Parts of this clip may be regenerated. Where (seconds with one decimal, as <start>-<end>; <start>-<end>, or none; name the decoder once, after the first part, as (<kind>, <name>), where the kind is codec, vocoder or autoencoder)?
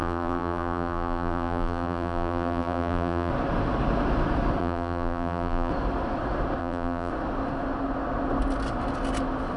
0.0-3.3 (vocoder, BigVGAN v2); 4.6-5.7; 6.6-7.1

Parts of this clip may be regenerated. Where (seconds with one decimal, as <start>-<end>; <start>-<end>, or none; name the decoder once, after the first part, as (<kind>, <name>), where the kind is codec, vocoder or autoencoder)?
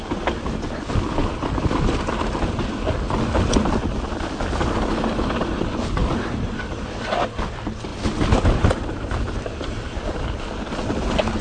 6.0-6.6 (vocoder, BigVGAN v2); 7.9-10.2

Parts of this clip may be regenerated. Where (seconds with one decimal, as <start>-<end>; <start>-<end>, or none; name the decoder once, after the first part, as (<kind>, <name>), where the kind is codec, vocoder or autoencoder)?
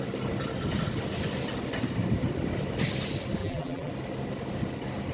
3.4-3.9 (vocoder, BigVGAN v2)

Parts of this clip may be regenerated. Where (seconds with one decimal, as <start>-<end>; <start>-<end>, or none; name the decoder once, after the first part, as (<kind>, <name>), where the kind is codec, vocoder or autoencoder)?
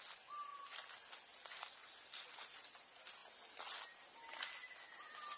none